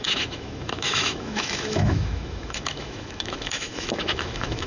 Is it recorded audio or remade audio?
remade